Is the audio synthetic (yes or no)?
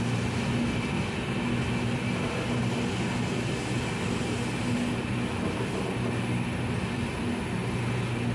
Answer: no